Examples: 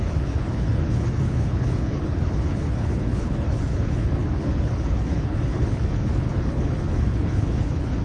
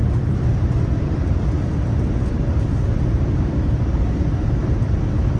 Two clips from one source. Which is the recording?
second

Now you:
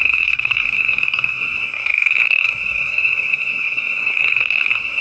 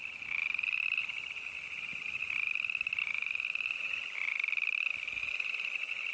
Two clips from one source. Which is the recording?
second